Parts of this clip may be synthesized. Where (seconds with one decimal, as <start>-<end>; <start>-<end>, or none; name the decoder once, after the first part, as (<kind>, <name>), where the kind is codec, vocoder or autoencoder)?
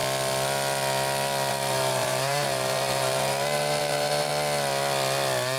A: 1.5-4.3 (vocoder, BigVGAN v2)